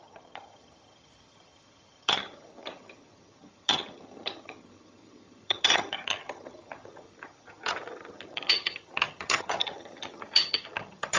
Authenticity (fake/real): fake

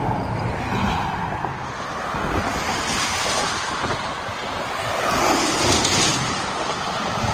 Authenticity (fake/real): real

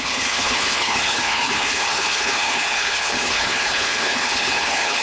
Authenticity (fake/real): fake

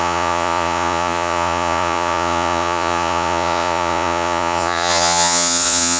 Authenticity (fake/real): fake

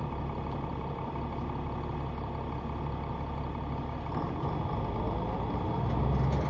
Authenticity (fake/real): real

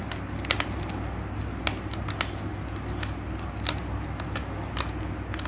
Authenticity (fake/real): real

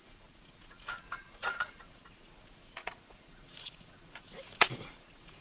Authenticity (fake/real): fake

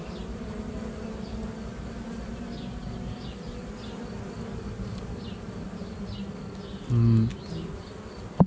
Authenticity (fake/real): real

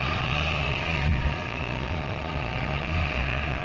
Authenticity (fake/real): fake